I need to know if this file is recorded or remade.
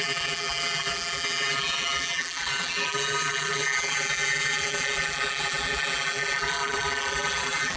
remade